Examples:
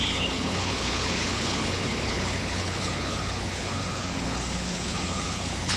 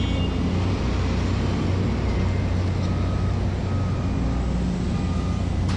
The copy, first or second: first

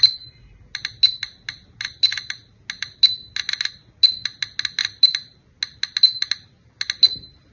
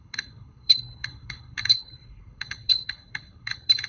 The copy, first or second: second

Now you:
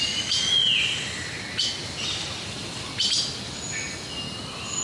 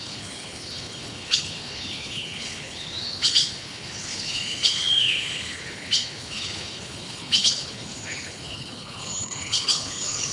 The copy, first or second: second